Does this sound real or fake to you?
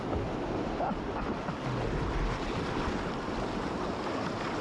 real